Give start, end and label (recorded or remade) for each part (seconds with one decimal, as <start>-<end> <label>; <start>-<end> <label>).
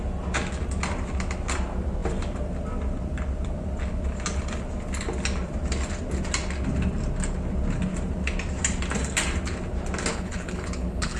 0.0-10.1 recorded; 10.1-11.2 remade